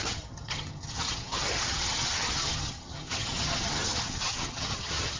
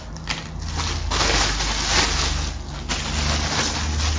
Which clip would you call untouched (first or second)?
second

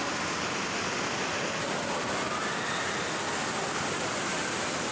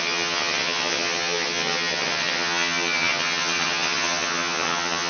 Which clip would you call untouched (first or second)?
first